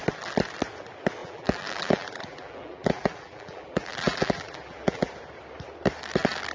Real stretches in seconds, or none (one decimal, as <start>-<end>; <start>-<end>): 0.0-1.2; 5.1-6.5